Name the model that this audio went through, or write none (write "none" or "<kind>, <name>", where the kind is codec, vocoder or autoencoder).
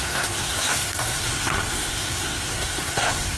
codec, SNAC